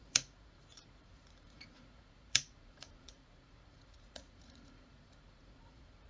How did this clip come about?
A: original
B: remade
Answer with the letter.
B